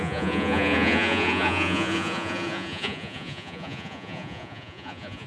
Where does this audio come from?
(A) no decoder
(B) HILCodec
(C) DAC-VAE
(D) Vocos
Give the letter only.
D